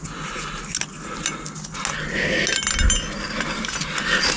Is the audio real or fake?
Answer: real